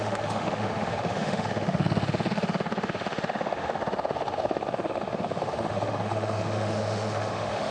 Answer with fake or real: fake